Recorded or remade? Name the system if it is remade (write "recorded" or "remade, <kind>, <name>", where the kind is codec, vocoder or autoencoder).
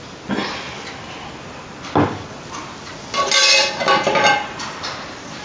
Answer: recorded